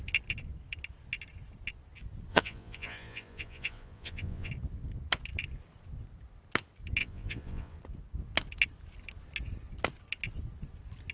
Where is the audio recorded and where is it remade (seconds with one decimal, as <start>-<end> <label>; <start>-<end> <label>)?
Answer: 0.0-2.3 recorded; 2.3-4.5 remade; 4.5-7.0 recorded; 7.0-7.8 remade; 7.8-11.1 recorded